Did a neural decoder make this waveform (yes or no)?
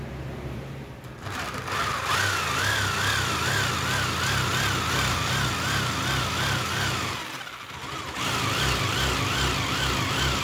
no